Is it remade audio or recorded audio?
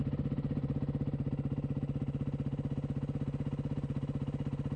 recorded